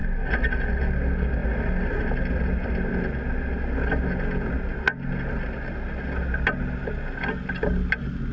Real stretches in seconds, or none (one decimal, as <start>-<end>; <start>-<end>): 0.0-8.3